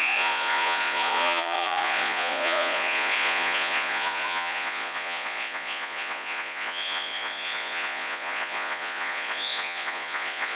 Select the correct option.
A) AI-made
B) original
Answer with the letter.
A